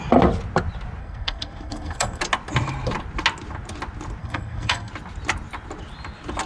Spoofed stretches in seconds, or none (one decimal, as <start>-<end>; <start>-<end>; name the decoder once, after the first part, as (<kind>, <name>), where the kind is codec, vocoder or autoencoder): 1.0-2.2 (codec, SNAC); 4.2-4.9